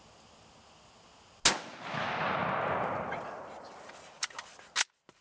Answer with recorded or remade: recorded